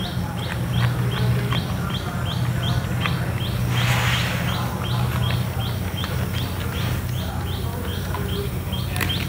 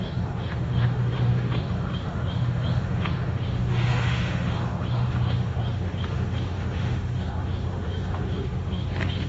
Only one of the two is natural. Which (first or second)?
first